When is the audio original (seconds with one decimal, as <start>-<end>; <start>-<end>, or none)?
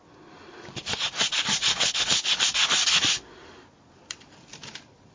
0.0-1.7; 2.3-5.1